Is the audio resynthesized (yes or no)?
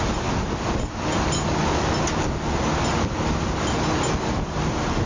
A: no